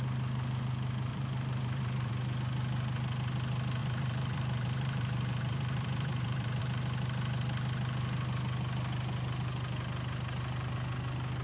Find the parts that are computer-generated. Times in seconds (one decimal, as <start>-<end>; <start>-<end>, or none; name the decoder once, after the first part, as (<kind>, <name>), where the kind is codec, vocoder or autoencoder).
1.1-2.1 (vocoder, BigVGAN v2); 3.8-6.6